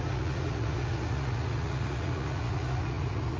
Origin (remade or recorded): remade